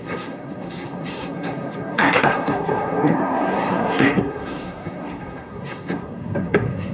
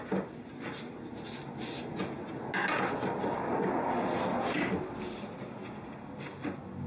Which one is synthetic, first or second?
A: first